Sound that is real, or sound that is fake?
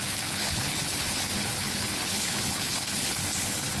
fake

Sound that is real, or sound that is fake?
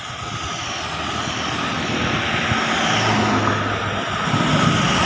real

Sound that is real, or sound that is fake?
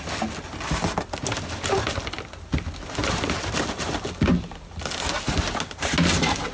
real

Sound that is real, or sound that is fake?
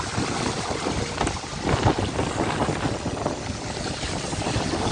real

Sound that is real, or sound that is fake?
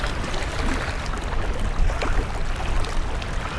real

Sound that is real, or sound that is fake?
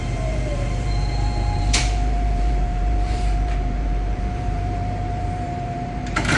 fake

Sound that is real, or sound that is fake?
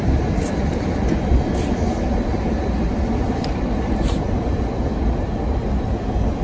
real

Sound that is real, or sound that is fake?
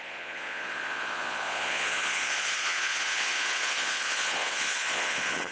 fake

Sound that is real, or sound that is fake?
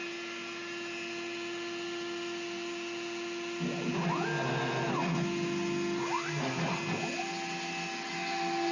real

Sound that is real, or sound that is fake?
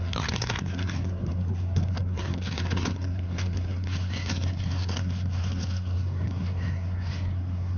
fake